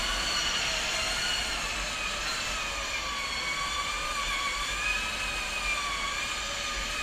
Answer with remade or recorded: recorded